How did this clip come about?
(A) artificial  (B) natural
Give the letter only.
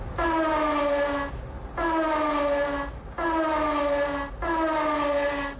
B